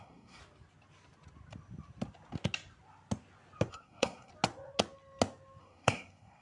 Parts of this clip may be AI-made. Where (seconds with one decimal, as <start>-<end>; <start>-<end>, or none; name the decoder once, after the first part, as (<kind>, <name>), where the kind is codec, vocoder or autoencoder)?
0.0-0.4 (codec, SNAC); 3.7-4.3; 5.6-6.4